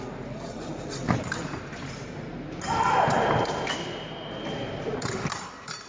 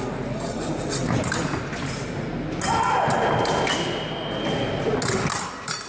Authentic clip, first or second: second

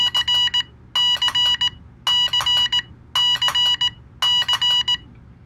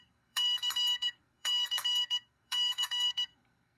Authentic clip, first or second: first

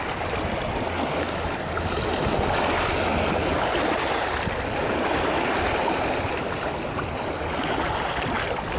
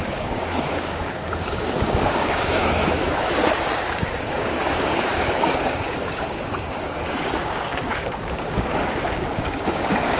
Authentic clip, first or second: first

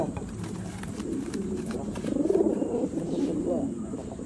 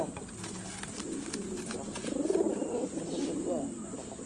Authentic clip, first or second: second